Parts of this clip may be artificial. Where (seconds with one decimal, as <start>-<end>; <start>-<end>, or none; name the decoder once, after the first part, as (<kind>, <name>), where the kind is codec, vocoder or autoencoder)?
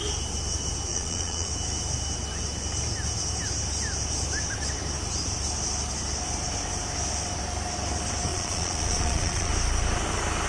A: 0.9-1.5 (vocoder, Vocos); 8.3-9.5